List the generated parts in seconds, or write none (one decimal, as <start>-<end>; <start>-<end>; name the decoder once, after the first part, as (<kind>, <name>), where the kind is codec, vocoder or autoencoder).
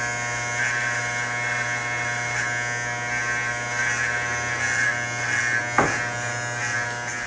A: none